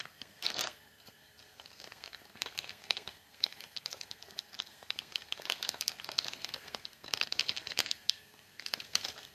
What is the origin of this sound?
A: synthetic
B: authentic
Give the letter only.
A